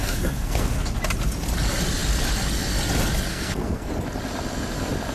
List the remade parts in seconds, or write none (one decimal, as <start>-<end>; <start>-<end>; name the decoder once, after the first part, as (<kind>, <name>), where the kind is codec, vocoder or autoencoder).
0.0-1.0 (codec, SNAC); 3.3-3.9